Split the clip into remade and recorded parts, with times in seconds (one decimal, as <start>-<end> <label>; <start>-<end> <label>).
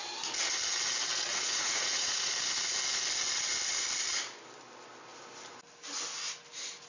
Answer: 0.0-1.3 recorded; 1.3-2.3 remade; 2.3-6.9 recorded